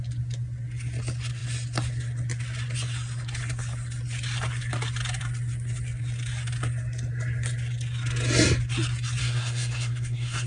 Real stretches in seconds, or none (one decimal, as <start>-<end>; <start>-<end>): 0.0-9.2